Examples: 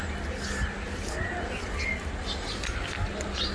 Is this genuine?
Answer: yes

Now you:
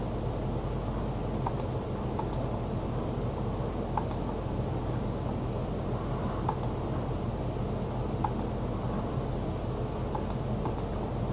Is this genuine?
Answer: yes